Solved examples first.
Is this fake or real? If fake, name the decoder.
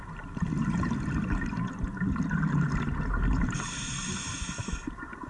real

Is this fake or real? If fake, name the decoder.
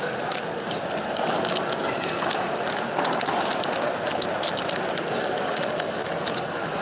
real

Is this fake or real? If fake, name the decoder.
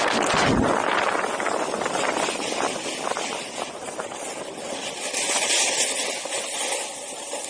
real